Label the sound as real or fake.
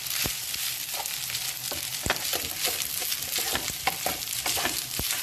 real